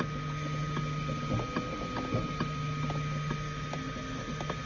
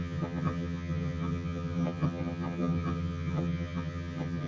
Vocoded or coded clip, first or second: second